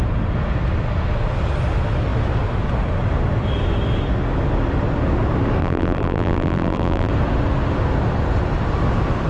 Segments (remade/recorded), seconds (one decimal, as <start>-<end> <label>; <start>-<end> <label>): 0.0-5.6 recorded; 5.6-7.1 remade; 7.1-9.3 recorded

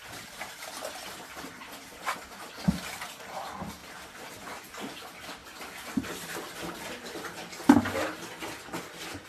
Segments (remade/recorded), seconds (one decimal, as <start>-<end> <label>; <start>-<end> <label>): 0.0-9.3 recorded

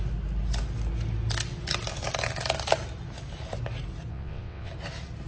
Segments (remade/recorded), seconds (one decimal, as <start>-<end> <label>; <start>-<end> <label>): 0.0-4.1 recorded; 4.1-4.7 remade; 4.7-5.3 recorded

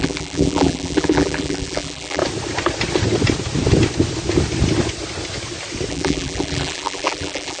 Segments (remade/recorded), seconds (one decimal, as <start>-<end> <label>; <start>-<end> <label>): 0.0-2.2 remade; 2.2-5.9 recorded; 5.9-7.6 remade